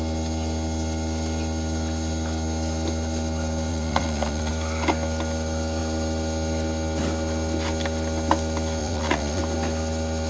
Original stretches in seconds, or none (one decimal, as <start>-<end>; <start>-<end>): 0.0-3.7; 4.5-8.8; 9.4-10.3